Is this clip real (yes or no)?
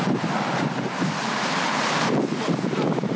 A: no